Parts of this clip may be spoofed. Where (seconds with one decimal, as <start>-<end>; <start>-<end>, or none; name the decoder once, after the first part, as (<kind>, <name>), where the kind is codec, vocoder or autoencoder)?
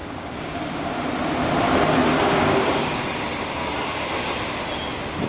0.0-0.9 (codec, DAC); 2.1-3.0